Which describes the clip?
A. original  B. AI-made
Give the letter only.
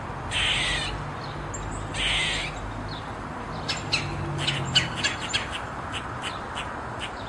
A